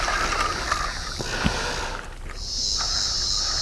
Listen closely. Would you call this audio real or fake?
real